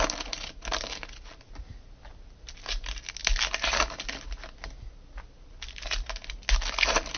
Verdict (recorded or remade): recorded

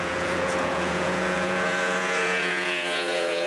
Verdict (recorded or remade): remade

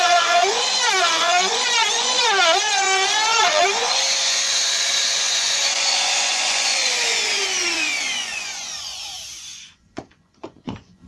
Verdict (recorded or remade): remade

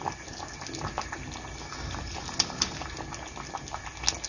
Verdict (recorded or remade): recorded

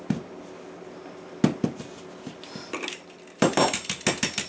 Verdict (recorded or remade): recorded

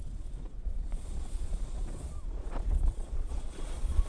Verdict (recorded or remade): remade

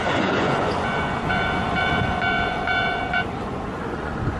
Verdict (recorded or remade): remade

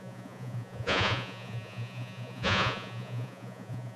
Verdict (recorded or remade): remade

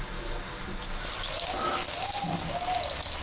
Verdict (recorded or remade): recorded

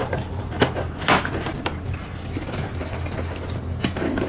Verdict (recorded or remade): recorded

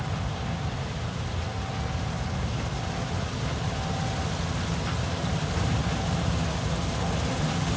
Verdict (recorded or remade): recorded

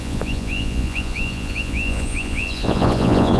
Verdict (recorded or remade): remade